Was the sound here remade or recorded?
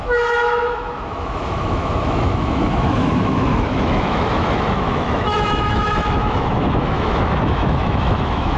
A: remade